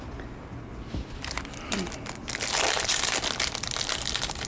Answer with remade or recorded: recorded